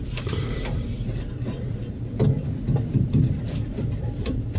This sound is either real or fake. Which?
fake